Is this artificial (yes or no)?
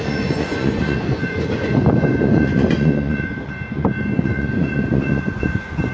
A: yes